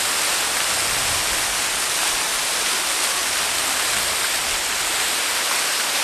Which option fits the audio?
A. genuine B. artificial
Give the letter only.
A